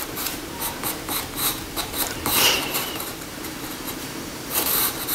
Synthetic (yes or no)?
yes